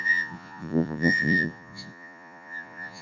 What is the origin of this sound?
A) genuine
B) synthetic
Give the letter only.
B